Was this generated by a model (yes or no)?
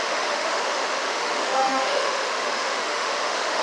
yes